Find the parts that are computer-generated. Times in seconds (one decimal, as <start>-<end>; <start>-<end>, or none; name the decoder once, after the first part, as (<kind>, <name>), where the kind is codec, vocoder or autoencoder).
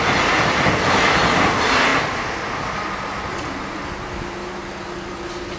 none